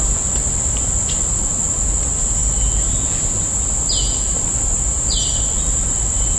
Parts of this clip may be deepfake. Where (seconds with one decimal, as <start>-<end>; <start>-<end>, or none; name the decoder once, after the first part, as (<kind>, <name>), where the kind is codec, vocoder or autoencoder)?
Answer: none